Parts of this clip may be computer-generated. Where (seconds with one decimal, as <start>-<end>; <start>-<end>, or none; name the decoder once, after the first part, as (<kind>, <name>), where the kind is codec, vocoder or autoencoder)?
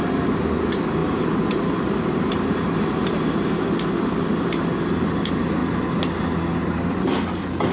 1.0-3.6 (vocoder, BigVGAN v2)